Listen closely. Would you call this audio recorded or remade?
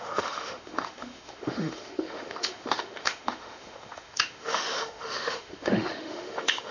remade